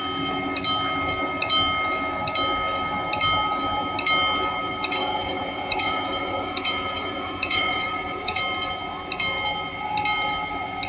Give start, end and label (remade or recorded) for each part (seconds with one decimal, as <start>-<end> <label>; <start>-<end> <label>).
0.0-5.0 recorded; 5.0-8.4 remade; 8.4-10.9 recorded